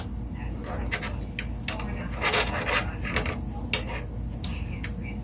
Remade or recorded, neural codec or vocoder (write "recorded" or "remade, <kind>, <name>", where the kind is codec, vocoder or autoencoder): recorded